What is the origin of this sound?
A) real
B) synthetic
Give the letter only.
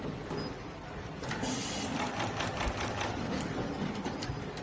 A